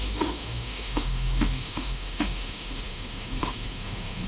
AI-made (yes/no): yes